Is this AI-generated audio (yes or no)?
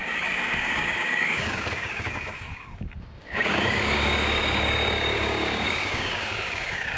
yes